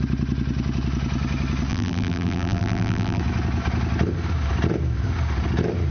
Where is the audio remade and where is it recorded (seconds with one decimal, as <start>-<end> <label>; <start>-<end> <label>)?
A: 0.0-1.7 recorded; 1.7-3.2 remade; 3.2-5.9 recorded

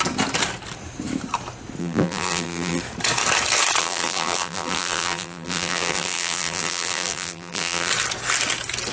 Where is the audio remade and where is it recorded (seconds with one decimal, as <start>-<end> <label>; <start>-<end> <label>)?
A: 0.0-1.8 recorded; 1.8-2.8 remade; 2.8-3.8 recorded; 3.8-7.9 remade; 7.9-8.9 recorded

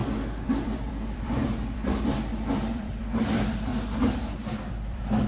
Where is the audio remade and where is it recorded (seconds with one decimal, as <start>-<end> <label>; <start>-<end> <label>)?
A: 0.0-3.7 remade; 3.7-4.4 recorded; 4.4-5.3 remade

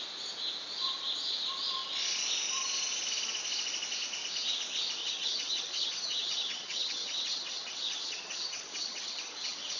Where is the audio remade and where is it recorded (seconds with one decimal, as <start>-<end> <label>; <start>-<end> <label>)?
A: 0.0-5.0 recorded; 5.0-9.8 remade

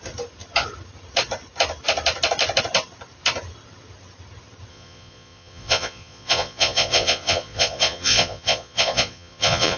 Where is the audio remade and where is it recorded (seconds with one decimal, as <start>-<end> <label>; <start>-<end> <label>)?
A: 0.0-4.7 recorded; 4.7-9.8 remade

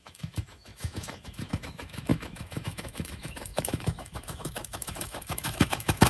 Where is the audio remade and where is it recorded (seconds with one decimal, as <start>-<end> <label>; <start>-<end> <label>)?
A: 0.0-6.1 remade